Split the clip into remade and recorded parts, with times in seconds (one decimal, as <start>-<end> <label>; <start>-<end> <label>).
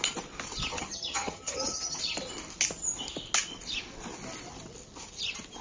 0.0-0.7 recorded; 0.7-2.0 remade; 2.0-5.6 recorded